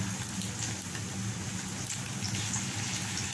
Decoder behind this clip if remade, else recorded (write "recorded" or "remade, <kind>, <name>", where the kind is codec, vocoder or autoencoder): recorded